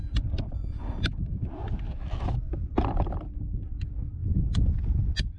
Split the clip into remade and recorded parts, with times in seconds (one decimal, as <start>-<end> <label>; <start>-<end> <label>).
0.0-4.2 recorded; 4.2-4.8 remade; 4.8-5.4 recorded